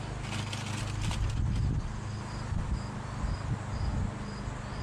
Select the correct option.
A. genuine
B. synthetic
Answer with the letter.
A